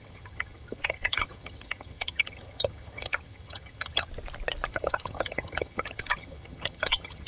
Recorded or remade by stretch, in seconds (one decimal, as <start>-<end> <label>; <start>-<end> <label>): 0.0-4.1 remade; 4.1-4.7 recorded; 4.7-7.3 remade